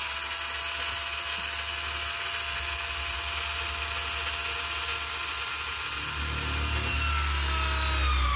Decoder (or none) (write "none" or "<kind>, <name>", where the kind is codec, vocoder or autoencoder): none